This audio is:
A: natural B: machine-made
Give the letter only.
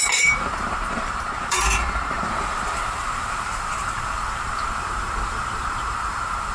B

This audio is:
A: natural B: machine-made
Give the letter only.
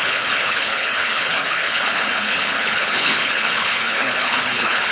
B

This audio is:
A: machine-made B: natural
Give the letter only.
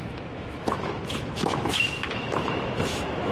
A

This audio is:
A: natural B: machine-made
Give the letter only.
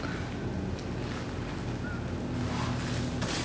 A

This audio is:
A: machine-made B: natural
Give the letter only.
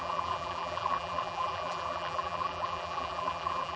A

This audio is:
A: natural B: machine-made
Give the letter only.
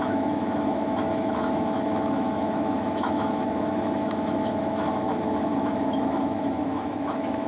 B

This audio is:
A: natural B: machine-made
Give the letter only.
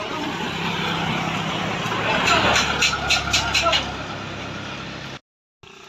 A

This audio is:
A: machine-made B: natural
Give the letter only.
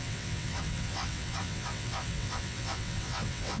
A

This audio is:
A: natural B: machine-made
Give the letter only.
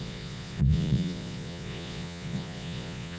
B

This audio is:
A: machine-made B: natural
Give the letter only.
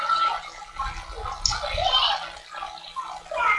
B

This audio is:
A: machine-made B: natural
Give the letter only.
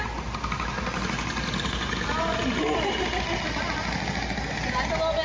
B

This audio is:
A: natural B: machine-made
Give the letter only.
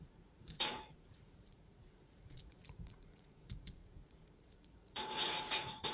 B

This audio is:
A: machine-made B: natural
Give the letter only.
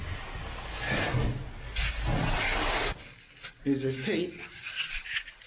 B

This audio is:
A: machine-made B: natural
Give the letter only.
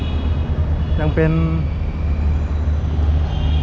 B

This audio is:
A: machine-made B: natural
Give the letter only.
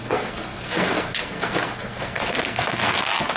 A